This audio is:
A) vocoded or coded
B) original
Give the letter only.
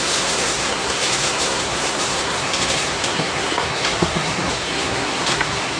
A